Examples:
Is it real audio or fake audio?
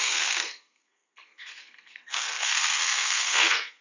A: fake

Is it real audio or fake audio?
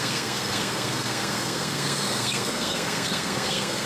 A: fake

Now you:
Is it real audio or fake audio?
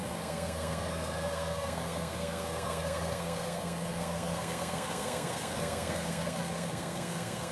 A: fake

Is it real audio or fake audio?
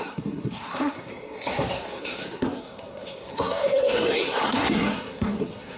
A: fake